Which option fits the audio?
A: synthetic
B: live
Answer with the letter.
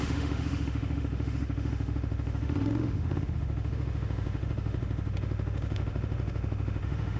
A